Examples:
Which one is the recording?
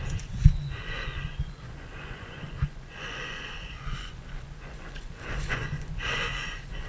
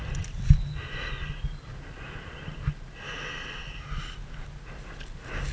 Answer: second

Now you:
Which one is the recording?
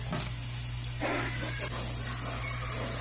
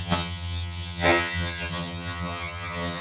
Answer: first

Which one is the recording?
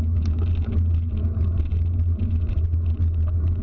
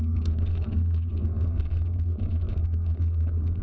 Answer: first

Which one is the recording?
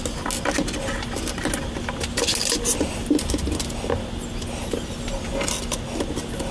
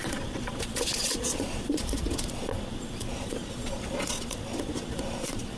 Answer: first